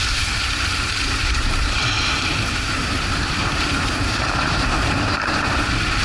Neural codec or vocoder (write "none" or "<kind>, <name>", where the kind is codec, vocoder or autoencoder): vocoder, BigVGAN v2